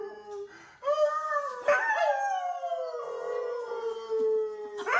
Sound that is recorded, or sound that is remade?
recorded